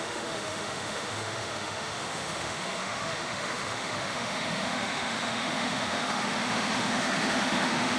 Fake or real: fake